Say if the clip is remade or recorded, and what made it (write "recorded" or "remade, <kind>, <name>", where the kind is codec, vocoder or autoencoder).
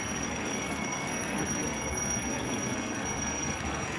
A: remade, codec, SNAC